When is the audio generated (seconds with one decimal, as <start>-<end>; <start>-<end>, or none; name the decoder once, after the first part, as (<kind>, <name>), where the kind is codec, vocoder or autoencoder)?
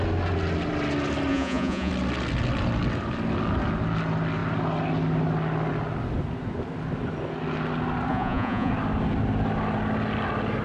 1.3-1.9 (vocoder, Vocos); 8.1-8.7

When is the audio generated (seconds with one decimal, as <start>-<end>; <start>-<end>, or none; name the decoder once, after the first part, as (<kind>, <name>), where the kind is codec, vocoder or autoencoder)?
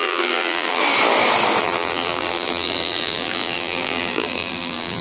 0.0-0.8 (vocoder, BigVGAN v2); 1.6-5.0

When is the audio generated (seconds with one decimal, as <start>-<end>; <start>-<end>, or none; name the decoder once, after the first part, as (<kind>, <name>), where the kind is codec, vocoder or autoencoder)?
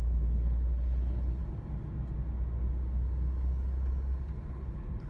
0.0-1.4 (codec, HILCodec); 4.5-5.1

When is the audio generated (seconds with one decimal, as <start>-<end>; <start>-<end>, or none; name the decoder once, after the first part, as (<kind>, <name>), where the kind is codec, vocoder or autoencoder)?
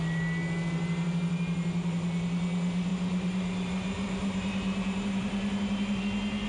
2.9-6.0 (vocoder, BigVGAN v2)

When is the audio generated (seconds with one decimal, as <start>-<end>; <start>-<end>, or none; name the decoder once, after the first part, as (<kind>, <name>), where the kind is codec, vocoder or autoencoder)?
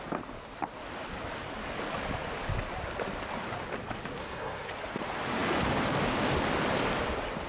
4.2-4.7 (codec, SNAC)